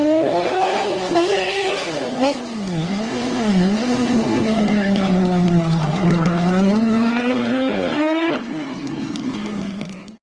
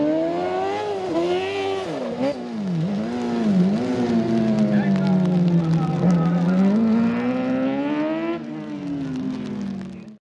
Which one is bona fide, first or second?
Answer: second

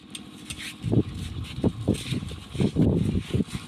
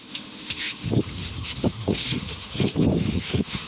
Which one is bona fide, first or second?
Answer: first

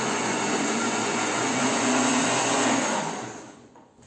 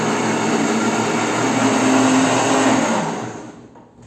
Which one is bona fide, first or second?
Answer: second